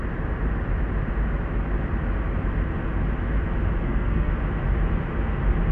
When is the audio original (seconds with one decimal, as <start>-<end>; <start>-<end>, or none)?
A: 0.0-3.8; 4.3-5.7